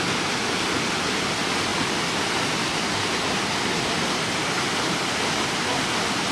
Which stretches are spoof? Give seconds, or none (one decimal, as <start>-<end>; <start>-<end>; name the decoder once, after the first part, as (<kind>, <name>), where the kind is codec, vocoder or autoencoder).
none